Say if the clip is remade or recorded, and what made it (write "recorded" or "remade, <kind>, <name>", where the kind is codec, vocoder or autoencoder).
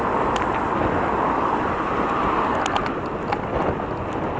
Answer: recorded